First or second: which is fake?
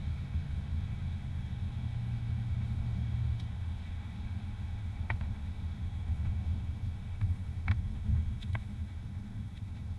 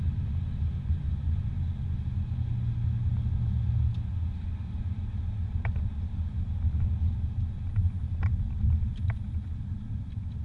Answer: first